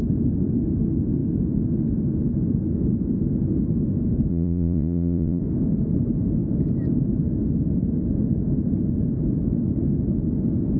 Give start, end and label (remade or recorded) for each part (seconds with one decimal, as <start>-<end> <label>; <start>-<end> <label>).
0.0-4.3 recorded; 4.3-5.4 remade; 5.4-10.8 recorded